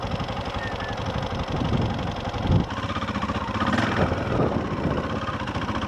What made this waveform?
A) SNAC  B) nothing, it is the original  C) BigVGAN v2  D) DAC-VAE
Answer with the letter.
B